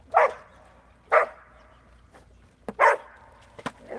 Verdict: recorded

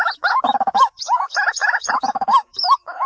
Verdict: remade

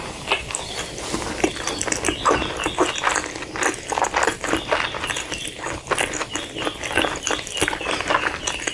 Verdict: recorded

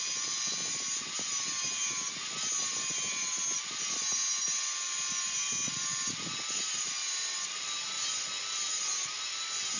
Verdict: recorded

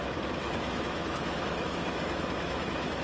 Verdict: remade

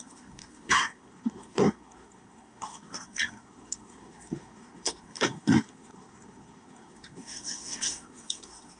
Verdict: remade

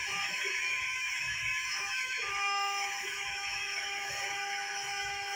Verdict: remade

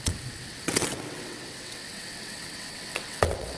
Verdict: remade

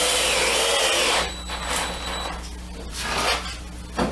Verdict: recorded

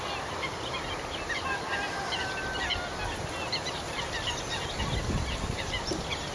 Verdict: recorded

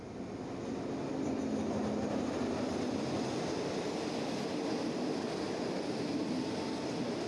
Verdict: recorded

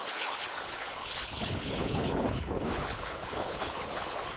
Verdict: remade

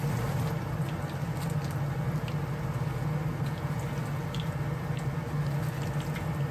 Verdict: recorded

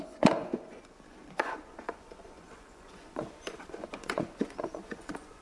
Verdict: remade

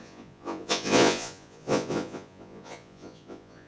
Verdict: remade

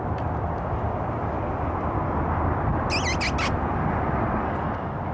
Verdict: recorded